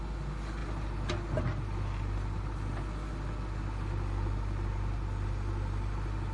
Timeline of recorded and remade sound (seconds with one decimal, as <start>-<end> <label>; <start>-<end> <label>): 0.0-6.3 recorded